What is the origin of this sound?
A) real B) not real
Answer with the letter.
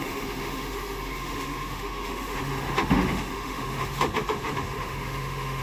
B